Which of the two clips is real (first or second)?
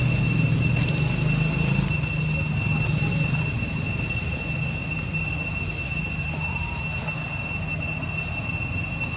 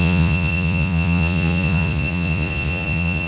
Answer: first